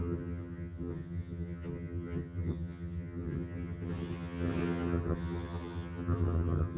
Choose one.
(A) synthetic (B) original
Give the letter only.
A